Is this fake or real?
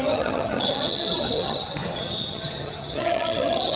fake